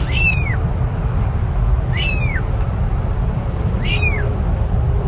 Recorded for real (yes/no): yes